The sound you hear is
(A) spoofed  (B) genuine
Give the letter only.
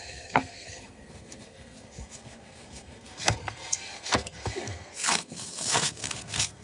A